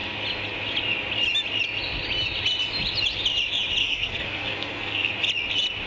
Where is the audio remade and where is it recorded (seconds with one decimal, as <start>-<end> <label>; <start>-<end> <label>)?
0.0-3.8 recorded; 3.8-5.1 remade; 5.1-5.9 recorded

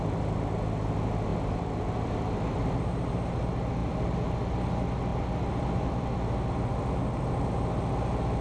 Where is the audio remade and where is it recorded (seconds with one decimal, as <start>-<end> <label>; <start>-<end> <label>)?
0.0-1.3 recorded; 1.3-2.8 remade; 2.8-3.8 recorded; 3.8-4.6 remade; 4.6-5.1 recorded; 5.1-7.0 remade; 7.0-8.4 recorded

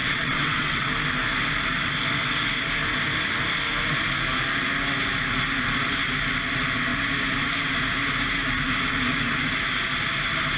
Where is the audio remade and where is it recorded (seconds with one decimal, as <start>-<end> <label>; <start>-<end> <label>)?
0.0-0.9 remade; 0.9-10.6 recorded

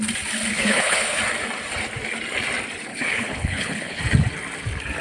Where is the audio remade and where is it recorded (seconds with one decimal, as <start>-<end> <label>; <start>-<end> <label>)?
0.0-0.5 recorded; 0.5-1.2 remade; 1.2-2.9 recorded; 2.9-4.0 remade; 4.0-5.0 recorded